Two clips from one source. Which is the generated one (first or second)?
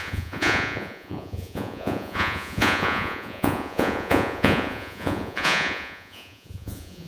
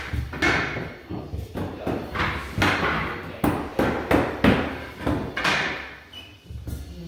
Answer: first